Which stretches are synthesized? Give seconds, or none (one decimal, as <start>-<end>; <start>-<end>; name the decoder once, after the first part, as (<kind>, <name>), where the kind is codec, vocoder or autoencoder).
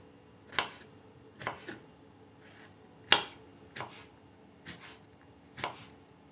none